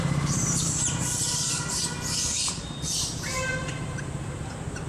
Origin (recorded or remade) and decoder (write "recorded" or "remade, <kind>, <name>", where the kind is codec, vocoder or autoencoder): remade, vocoder, BigVGAN v2